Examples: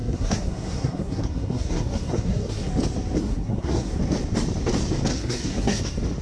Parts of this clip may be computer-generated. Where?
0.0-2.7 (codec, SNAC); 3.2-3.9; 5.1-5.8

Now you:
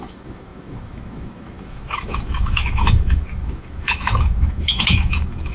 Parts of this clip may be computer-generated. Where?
0.0-5.5 (autoencoder, DAC-VAE)

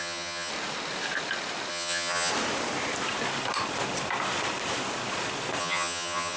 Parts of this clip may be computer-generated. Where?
0.0-0.5 (vocoder, HiFi-GAN); 1.7-2.3; 5.6-6.4

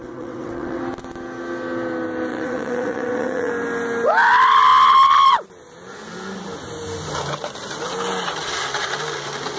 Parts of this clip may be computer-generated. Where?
0.0-0.8 (vocoder, WaveNeXt); 2.3-3.5

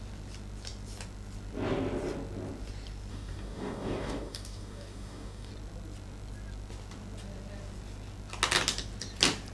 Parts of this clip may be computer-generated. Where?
3.1-5.5 (codec, DAC)

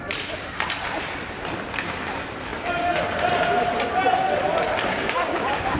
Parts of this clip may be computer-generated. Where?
4.9-5.8 (codec, DAC)